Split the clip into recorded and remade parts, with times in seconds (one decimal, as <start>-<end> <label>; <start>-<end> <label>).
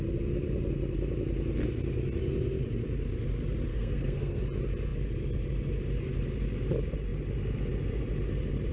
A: 0.0-3.7 recorded; 3.7-4.4 remade; 4.4-8.7 recorded